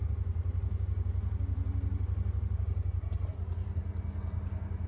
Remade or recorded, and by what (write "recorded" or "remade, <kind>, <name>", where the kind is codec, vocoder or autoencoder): recorded